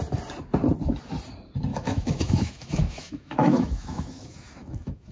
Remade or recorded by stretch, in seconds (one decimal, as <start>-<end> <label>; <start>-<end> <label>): 0.0-1.7 recorded; 1.7-5.1 remade